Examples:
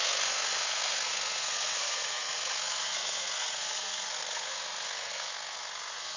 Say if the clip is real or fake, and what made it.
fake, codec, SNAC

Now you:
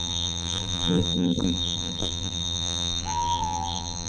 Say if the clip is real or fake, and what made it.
fake, vocoder, BigVGAN v2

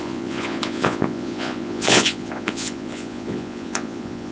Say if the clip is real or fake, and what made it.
fake, vocoder, Vocos